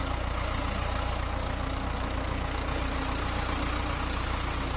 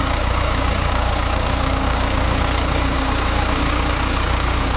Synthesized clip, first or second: second